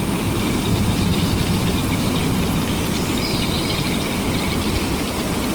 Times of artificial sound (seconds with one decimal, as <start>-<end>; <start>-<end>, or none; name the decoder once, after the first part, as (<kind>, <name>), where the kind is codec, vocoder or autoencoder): 0.0-1.8 (vocoder, BigVGAN v2); 4.5-5.5